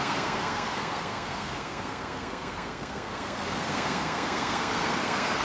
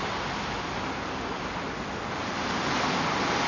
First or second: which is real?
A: second